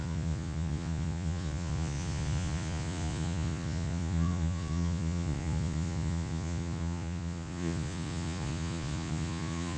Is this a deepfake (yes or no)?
yes